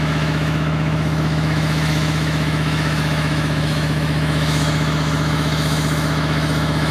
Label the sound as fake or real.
fake